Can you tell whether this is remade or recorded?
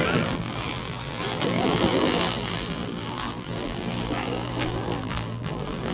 remade